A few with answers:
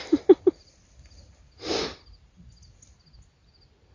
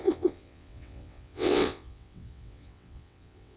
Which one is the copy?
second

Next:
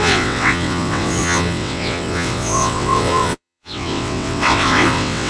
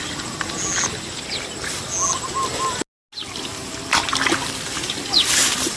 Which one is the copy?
first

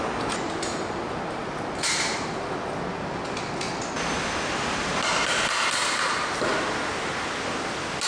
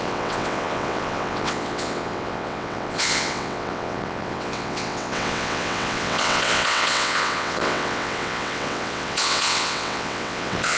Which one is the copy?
second